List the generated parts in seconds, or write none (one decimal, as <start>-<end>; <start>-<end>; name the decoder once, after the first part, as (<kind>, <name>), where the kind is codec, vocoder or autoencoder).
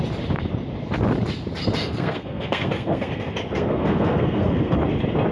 1.8-4.8 (codec, SNAC)